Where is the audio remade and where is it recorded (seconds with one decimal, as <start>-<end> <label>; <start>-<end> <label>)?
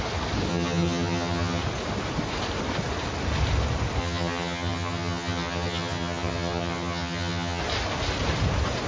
0.0-0.5 recorded; 0.5-1.6 remade; 1.6-4.0 recorded; 4.0-7.6 remade; 7.6-8.9 recorded